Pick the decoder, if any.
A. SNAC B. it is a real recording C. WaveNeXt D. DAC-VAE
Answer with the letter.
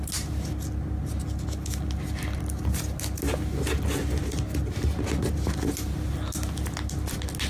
B